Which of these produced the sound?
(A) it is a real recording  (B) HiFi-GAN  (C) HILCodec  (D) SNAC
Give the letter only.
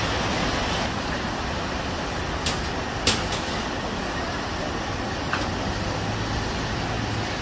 A